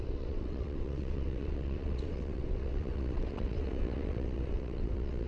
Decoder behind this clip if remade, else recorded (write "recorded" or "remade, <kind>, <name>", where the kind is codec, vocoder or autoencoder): remade, vocoder, WaveNeXt